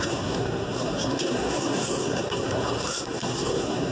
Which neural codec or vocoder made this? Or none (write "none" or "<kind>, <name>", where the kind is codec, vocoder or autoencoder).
codec, SNAC